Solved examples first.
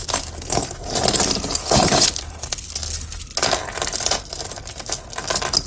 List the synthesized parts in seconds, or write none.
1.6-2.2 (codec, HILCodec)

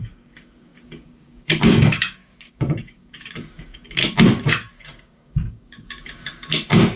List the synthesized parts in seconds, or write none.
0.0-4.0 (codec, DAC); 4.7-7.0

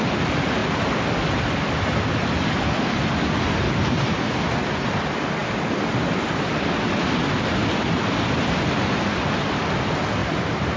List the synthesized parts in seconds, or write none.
10.2-10.8 (vocoder, BigVGAN v2)

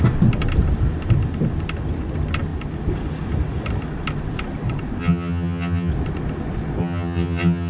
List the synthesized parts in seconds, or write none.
5.0-5.9 (vocoder, HiFi-GAN); 6.8-7.7

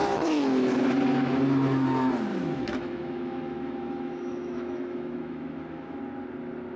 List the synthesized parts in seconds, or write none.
0.0-0.8 (autoencoder, DAC-VAE); 2.3-6.0

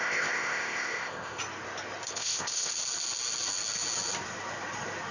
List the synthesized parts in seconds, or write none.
0.0-1.4 (codec, ZipCodec); 2.1-2.7

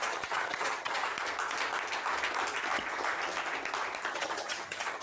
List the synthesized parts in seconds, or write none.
0.0-1.1 (vocoder, HiFi-GAN); 4.1-5.0

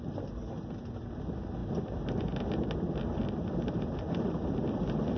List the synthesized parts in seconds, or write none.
none